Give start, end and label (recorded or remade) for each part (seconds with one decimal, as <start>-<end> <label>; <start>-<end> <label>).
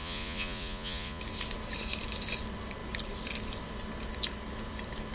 0.0-1.2 remade; 1.2-5.1 recorded